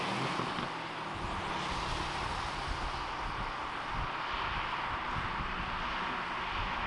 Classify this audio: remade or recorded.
recorded